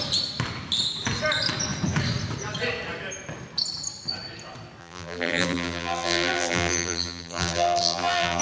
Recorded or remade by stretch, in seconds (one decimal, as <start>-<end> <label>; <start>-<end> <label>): 0.0-4.8 recorded; 4.8-8.4 remade

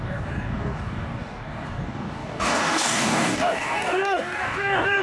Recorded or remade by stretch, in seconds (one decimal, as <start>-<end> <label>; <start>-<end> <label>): 0.0-5.0 remade

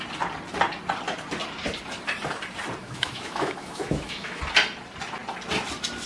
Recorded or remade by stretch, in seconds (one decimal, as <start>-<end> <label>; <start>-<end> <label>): 0.0-2.8 recorded; 2.8-4.4 remade; 4.4-6.1 recorded

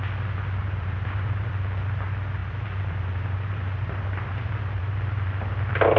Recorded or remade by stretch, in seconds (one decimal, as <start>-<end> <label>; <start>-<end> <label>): 0.0-0.6 recorded; 0.6-1.5 remade; 1.5-2.4 recorded; 2.4-5.3 remade; 5.3-6.0 recorded

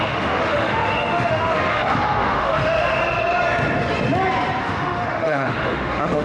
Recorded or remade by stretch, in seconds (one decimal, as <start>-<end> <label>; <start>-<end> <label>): 0.0-3.0 remade; 3.0-4.6 recorded; 4.6-6.2 remade

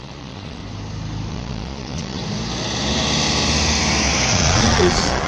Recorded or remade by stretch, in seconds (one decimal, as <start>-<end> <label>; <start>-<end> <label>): 0.0-0.6 remade; 0.6-1.3 recorded; 1.3-2.2 remade; 2.2-4.3 recorded; 4.3-5.3 remade

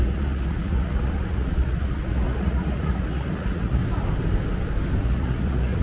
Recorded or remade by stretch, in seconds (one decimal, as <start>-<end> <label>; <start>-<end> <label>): 0.0-3.8 remade; 3.8-5.0 recorded; 5.0-5.8 remade